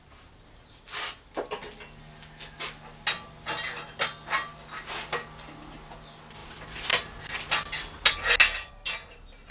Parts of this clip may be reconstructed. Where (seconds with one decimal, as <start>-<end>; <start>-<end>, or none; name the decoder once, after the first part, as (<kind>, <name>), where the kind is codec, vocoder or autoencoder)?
none